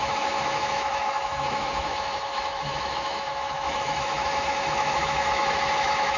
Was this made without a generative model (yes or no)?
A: no